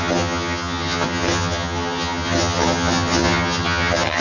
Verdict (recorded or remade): remade